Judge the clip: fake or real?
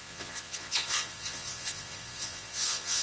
fake